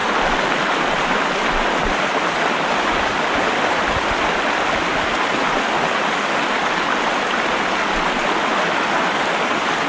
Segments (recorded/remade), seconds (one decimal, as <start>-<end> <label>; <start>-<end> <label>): 0.0-9.9 recorded